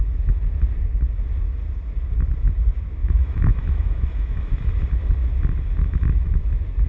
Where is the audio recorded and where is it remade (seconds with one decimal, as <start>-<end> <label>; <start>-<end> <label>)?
0.0-3.0 recorded; 3.0-4.5 remade; 4.5-5.8 recorded; 5.8-6.4 remade; 6.4-6.9 recorded